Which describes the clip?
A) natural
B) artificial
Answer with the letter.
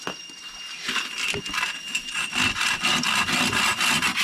A